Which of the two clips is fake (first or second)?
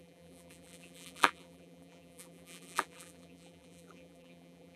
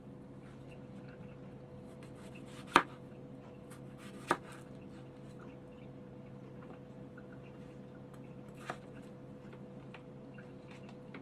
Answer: first